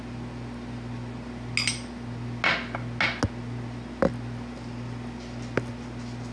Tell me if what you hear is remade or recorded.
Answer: recorded